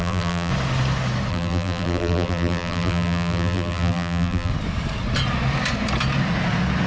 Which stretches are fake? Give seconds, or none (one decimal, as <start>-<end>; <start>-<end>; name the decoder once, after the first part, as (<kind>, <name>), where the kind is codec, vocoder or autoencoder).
0.0-0.5 (vocoder, BigVGAN v2); 1.3-4.5